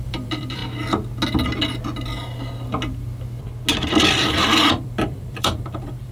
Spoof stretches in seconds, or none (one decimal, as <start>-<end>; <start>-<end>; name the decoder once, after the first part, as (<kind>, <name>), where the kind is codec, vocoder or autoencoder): 0.0-0.6 (vocoder, BigVGAN v2); 4.3-6.1